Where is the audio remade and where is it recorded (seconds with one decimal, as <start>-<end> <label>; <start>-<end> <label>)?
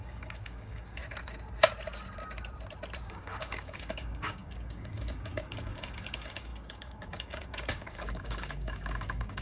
0.0-1.0 remade; 1.0-3.1 recorded; 3.1-9.4 remade